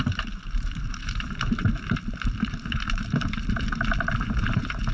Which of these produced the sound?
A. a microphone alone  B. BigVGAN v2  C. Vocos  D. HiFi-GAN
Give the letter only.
B